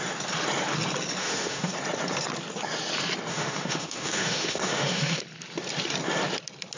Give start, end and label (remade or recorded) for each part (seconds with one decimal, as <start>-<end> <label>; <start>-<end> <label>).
0.0-1.2 recorded; 1.2-1.7 remade; 1.7-3.3 recorded; 3.3-5.2 remade; 5.2-6.8 recorded